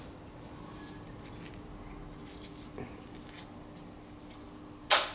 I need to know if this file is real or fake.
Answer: real